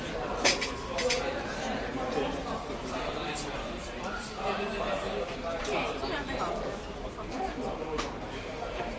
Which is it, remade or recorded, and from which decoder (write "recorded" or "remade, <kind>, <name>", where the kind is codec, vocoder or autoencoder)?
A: remade, vocoder, BigVGAN v2